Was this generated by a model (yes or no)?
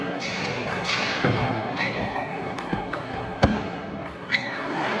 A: yes